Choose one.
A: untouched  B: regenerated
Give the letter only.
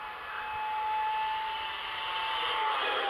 A